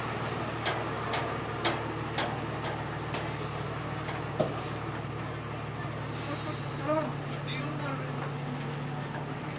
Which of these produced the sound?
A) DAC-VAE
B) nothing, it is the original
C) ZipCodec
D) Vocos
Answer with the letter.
B